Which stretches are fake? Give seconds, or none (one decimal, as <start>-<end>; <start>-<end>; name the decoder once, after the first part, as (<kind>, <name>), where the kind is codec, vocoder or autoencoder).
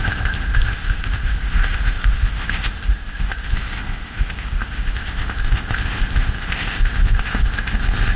0.0-8.2 (codec, ZipCodec)